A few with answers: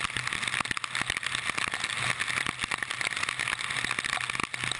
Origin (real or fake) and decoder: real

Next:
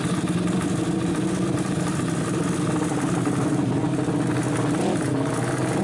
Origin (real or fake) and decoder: real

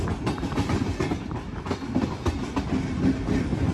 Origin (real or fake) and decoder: real